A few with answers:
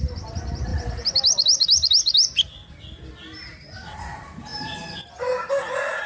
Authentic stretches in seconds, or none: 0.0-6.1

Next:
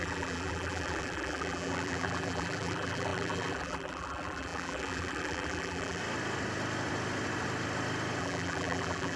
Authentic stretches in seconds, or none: 6.0-8.2